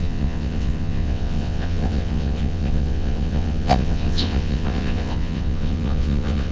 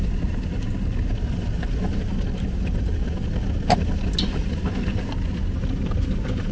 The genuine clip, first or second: second